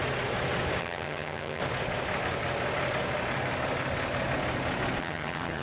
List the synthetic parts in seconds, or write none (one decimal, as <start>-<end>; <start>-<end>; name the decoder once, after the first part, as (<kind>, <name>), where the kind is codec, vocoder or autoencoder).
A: 0.8-1.6 (vocoder, HiFi-GAN); 5.0-5.6